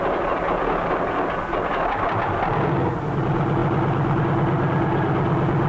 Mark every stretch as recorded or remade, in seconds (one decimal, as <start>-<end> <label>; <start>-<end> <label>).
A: 0.0-5.7 recorded